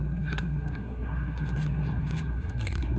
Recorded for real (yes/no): no